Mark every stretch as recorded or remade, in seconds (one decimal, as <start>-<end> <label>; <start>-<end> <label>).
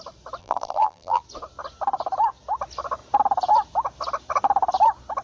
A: 0.0-0.4 recorded; 0.4-1.2 remade; 1.2-5.2 recorded